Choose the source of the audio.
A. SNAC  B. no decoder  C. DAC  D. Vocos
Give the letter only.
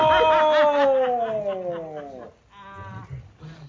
B